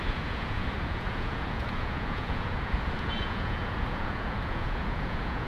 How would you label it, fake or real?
fake